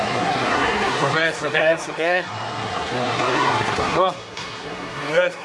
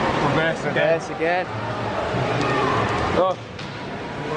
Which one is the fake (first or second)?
first